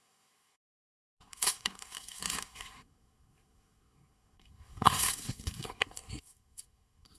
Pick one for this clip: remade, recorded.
remade